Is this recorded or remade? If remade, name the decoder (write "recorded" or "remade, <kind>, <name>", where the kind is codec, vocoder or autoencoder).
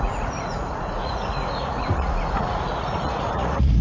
remade, vocoder, Vocos